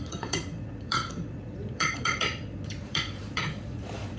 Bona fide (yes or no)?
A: no